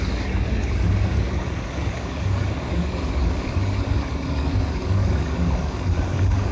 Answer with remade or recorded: remade